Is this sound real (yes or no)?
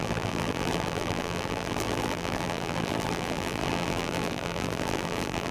no